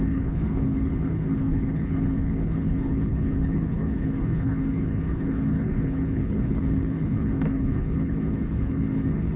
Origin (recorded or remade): remade